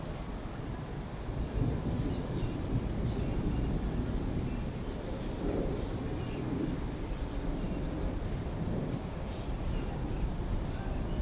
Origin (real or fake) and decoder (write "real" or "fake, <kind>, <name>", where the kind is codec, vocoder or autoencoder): fake, vocoder, BigVGAN v2